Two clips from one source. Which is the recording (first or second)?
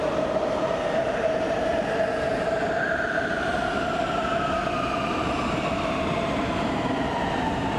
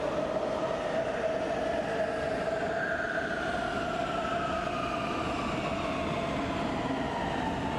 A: second